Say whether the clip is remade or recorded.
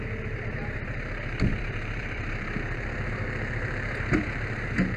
remade